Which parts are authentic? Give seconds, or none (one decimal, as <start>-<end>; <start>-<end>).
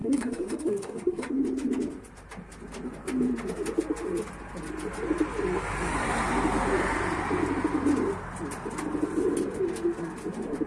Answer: 1.3-10.7